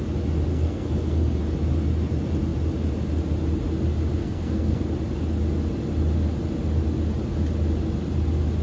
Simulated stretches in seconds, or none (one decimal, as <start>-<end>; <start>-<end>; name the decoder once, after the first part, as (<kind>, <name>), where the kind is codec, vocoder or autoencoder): 0.5-1.4 (codec, SNAC); 4.2-4.8

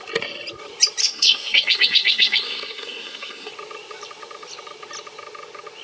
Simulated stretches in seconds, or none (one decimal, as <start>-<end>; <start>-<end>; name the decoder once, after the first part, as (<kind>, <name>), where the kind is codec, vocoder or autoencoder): 1.0-3.5 (codec, SNAC)

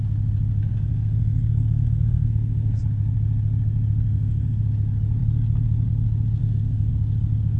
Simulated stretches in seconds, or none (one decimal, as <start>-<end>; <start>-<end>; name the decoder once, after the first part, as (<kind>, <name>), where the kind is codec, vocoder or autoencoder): 0.7-2.8 (codec, SNAC); 4.1-4.6; 6.4-6.9

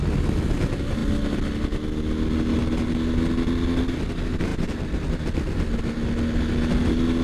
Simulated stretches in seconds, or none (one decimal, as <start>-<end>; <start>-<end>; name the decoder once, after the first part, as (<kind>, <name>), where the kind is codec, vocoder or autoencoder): none

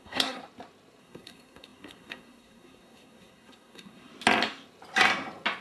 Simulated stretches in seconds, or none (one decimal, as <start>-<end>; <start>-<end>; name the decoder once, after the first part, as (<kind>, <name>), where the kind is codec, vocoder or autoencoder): 0.0-0.4 (codec, SNAC); 1.0-4.1

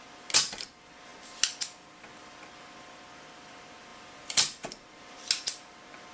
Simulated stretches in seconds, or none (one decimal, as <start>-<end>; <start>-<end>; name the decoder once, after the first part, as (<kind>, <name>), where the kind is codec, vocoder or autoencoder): none